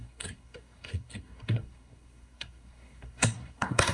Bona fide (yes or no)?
no